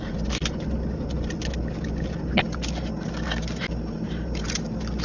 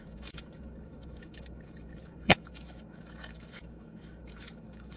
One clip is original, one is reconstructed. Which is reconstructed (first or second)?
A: second